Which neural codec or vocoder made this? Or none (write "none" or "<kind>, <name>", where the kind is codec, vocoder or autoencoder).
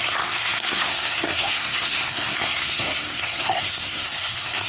codec, SNAC